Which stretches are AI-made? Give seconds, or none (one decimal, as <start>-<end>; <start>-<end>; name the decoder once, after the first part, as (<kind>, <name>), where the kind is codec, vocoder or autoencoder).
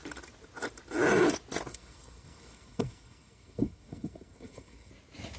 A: 1.7-4.9 (codec, SNAC)